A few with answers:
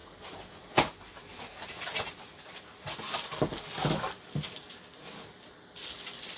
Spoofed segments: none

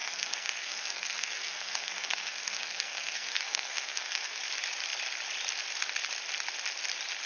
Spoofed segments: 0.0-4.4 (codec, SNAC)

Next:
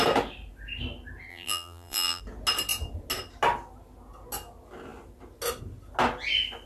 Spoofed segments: 1.3-2.2 (vocoder, BigVGAN v2)

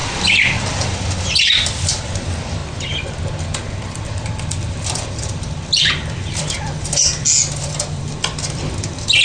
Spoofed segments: 0.0-2.6 (vocoder, BigVGAN v2); 4.6-7.1; 8.0-9.2

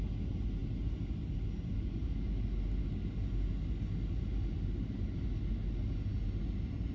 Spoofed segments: none